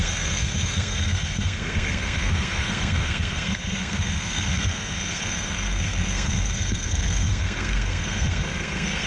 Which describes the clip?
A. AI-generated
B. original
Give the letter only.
A